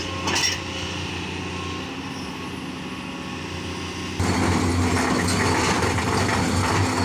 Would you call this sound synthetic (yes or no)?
no